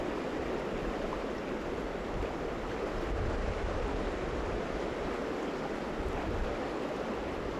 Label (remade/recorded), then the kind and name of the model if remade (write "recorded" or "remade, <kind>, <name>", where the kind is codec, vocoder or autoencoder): recorded